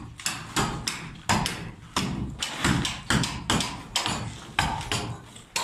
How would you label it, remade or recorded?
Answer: recorded